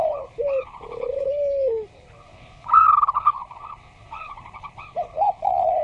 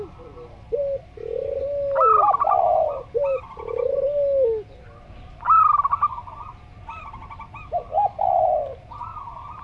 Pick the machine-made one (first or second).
first